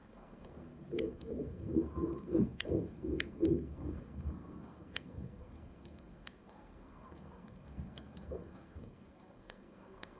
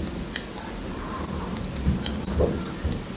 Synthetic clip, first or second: first